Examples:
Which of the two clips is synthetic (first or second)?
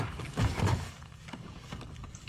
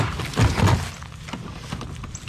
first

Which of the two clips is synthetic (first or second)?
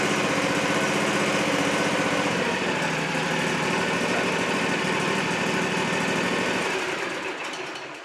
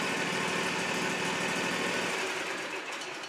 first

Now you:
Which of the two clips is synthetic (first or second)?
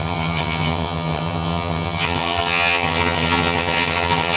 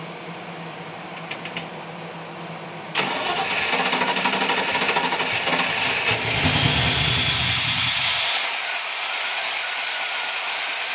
first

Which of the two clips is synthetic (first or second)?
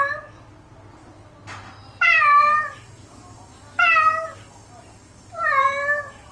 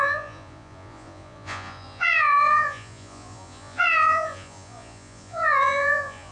second